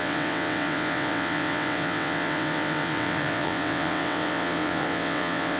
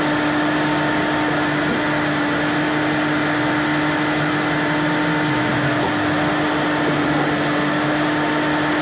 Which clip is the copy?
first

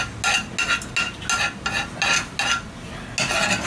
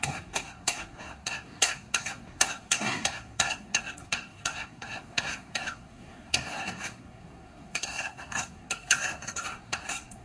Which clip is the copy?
second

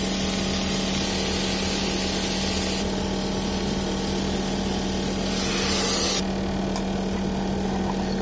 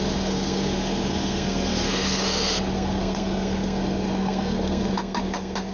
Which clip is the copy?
second